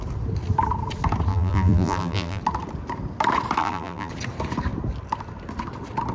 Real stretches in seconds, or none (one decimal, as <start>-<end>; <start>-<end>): 0.0-1.3; 2.4-3.6; 4.1-6.1